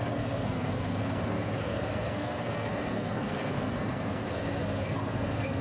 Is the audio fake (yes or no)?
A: yes